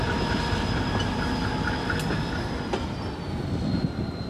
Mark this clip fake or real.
real